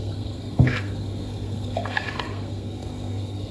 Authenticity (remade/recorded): remade